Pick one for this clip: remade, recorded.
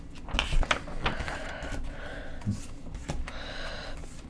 recorded